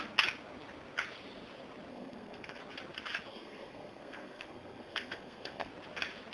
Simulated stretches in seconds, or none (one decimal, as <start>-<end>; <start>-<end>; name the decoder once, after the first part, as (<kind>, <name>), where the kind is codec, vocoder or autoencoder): 1.9-2.6 (codec, SNAC); 3.3-5.7